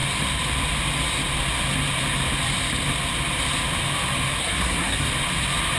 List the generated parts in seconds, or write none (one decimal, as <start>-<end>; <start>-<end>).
4.4-5.1